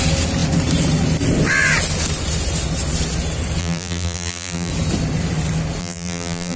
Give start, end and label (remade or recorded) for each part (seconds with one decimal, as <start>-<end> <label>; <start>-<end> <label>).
0.0-3.6 recorded; 3.6-4.7 remade; 4.7-5.8 recorded; 5.8-6.6 remade